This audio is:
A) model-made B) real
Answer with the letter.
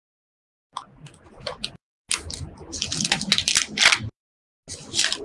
B